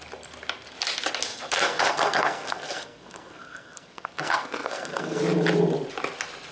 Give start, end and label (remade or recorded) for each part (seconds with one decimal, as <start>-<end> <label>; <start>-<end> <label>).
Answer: 0.0-1.3 recorded; 1.3-5.2 remade; 5.2-6.5 recorded